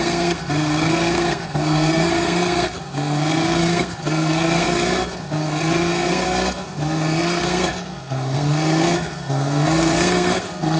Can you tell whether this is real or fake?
fake